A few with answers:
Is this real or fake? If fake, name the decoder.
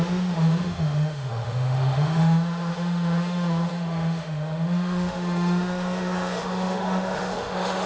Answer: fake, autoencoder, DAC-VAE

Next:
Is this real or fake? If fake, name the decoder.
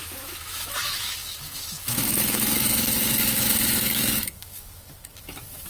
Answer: fake, autoencoder, DAC-VAE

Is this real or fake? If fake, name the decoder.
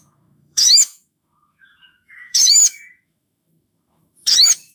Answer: fake, autoencoder, DAC-VAE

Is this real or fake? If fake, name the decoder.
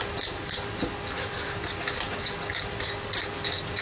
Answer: real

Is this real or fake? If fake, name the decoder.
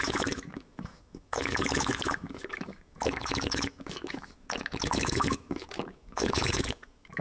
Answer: fake, autoencoder, DAC-VAE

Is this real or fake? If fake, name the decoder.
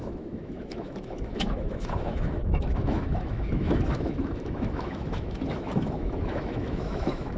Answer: fake, autoencoder, DAC-VAE